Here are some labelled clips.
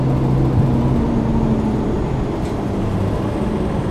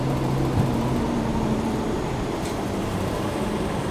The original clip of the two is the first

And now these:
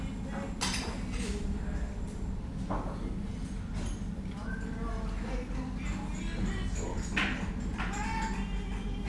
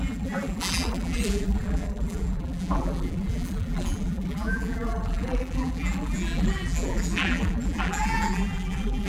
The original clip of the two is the first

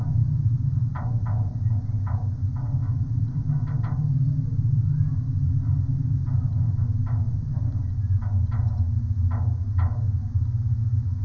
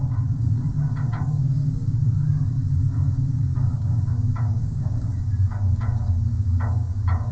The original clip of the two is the first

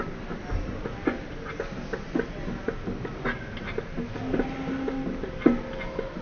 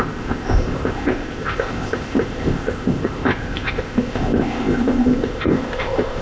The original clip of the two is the first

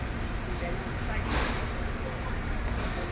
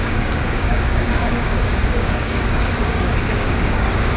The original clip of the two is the first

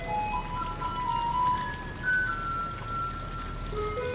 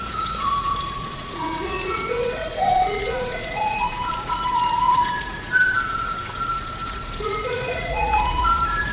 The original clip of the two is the first